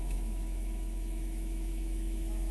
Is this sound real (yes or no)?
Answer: no